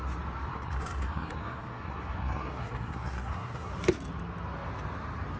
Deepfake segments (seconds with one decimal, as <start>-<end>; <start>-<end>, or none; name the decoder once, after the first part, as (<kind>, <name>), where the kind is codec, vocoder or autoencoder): 0.5-3.7 (codec, SNAC)